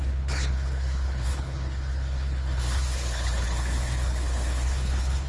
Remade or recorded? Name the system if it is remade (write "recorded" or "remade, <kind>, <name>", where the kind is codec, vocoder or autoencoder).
remade, codec, HILCodec